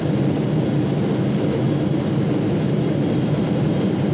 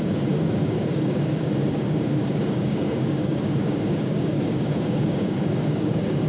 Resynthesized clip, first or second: second